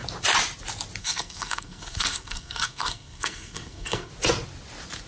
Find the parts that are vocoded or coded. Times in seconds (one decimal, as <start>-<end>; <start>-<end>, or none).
1.0-4.1